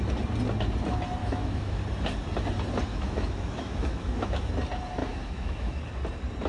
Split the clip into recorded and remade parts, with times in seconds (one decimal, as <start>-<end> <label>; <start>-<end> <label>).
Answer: 0.0-1.2 recorded; 1.2-1.8 remade; 1.8-2.9 recorded; 2.9-4.5 remade; 4.5-5.0 recorded; 5.0-5.8 remade; 5.8-6.5 recorded